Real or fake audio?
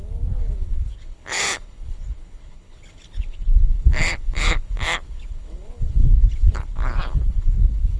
fake